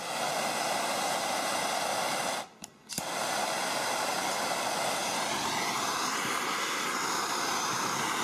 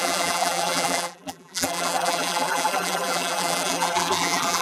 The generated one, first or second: second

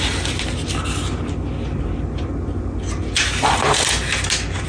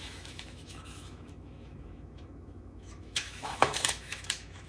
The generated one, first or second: second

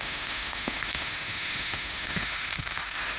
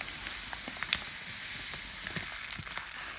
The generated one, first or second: first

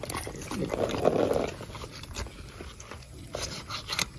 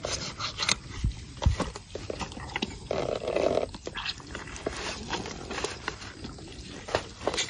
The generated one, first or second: second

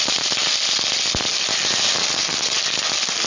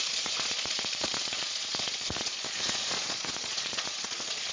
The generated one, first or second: second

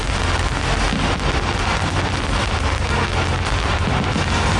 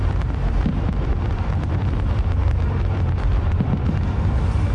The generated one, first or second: second